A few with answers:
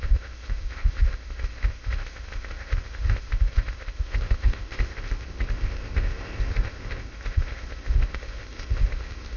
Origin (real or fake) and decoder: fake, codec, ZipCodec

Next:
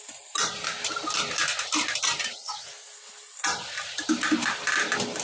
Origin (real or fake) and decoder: real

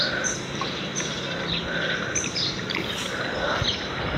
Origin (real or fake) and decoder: real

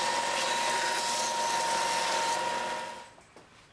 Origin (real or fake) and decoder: real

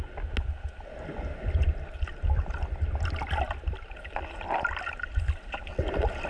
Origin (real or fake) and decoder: real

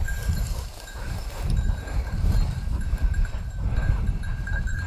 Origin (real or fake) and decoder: fake, vocoder, BigVGAN v2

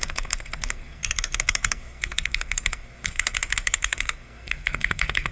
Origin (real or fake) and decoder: fake, codec, SNAC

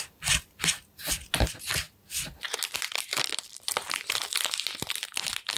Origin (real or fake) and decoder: fake, vocoder, BigVGAN v2